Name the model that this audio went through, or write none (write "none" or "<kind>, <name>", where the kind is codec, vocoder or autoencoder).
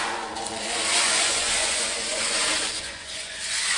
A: vocoder, Vocos